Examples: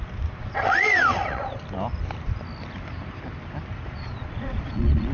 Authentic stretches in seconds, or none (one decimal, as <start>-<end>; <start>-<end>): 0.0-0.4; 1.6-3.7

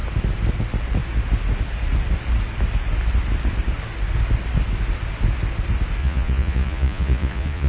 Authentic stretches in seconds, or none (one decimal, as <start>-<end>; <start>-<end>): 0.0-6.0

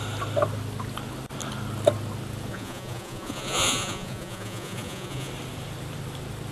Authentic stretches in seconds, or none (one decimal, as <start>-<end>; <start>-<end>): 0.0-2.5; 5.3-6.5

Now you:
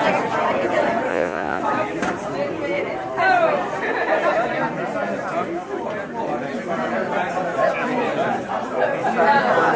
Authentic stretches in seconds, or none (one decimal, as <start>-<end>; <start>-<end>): 0.0-1.1; 1.6-9.8

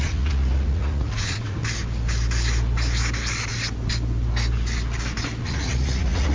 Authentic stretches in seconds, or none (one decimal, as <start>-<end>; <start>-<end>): 1.6-5.4

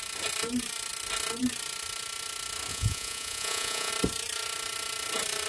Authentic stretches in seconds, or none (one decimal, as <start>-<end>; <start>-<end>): 0.0-2.7; 3.9-5.5